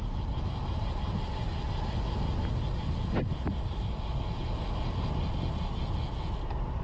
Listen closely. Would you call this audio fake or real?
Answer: real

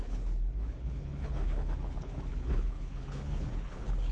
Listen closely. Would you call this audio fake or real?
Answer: fake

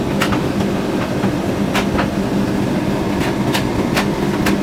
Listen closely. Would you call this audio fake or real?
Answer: real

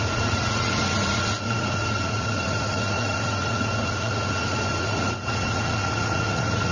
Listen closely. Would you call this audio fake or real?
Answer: fake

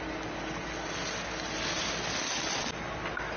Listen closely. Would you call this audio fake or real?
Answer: real